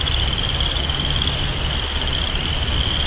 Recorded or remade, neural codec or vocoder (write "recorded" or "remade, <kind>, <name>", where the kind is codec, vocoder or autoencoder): recorded